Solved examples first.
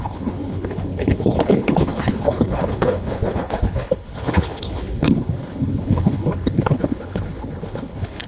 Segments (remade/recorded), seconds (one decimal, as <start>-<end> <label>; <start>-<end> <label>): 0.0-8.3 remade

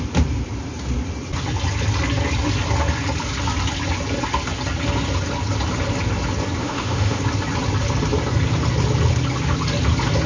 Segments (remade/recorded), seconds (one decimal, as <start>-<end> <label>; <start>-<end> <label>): 0.0-6.6 recorded; 6.6-7.2 remade; 7.2-10.3 recorded

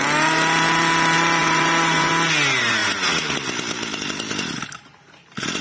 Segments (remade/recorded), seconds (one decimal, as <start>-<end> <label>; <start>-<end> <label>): 0.0-1.4 recorded; 1.4-2.1 remade; 2.1-5.6 recorded

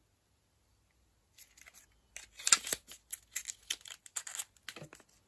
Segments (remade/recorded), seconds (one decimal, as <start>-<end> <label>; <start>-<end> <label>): 0.0-5.3 recorded

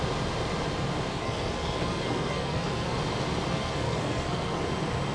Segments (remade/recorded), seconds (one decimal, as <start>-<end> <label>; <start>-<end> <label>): 0.0-1.1 recorded; 1.1-3.0 remade; 3.0-3.5 recorded; 3.5-4.6 remade; 4.6-5.1 recorded

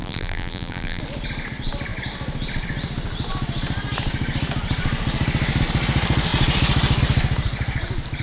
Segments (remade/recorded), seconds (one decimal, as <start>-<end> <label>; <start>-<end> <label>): 0.0-1.0 remade; 1.0-8.2 recorded

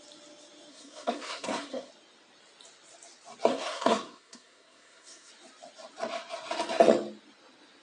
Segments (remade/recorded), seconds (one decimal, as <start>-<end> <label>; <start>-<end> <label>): 0.0-0.7 recorded; 0.7-1.9 remade; 1.9-3.5 recorded; 3.5-5.3 remade; 5.3-7.8 recorded

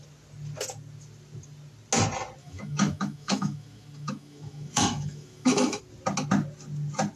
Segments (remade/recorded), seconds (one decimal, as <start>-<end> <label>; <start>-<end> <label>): 0.0-2.4 recorded; 2.4-5.8 remade; 5.8-7.2 recorded